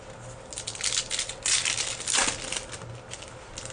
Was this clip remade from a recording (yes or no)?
no